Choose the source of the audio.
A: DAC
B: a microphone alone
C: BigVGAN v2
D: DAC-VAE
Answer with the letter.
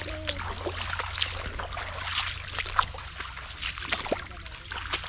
B